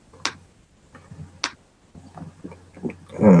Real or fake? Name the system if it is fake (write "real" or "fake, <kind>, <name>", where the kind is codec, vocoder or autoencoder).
real